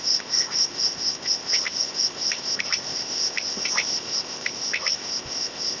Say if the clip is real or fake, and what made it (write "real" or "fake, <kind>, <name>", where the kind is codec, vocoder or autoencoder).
fake, codec, ZipCodec